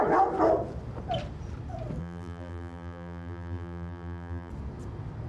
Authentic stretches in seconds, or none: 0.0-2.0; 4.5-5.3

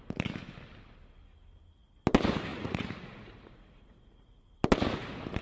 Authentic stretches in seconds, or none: 0.0-2.5; 4.5-5.4

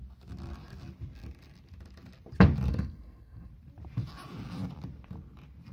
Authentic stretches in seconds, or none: 0.0-2.7; 3.5-5.7